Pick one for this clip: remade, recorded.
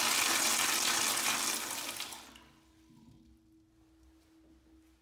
recorded